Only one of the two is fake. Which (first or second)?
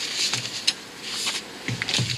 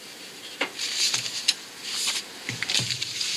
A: second